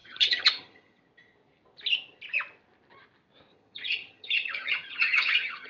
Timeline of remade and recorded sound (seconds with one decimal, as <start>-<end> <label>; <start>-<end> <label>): 0.0-1.0 remade; 1.0-3.5 recorded; 3.5-5.7 remade